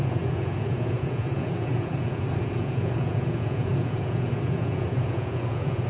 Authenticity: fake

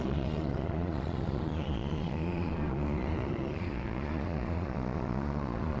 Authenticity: fake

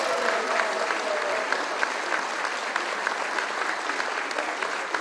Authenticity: real